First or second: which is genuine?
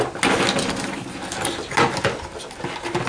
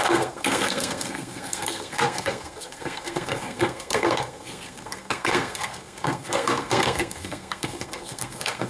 first